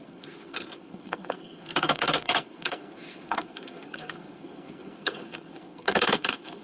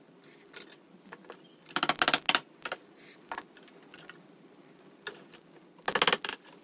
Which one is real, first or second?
second